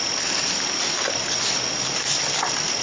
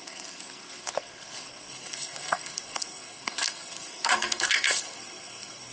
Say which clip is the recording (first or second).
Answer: first